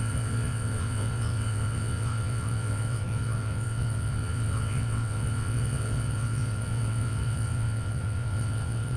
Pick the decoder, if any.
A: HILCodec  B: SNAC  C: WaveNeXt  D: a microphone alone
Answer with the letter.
C